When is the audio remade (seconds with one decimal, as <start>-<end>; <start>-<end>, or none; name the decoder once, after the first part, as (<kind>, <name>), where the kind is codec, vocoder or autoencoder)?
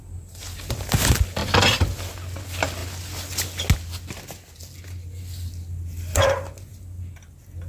none